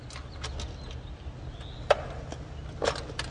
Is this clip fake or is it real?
real